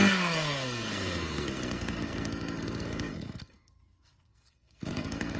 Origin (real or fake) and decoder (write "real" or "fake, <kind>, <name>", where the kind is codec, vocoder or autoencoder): fake, codec, SNAC